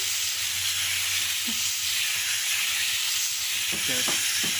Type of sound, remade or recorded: recorded